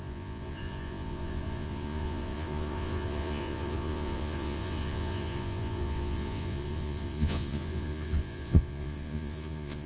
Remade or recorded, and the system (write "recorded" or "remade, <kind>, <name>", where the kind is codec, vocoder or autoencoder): remade, vocoder, Vocos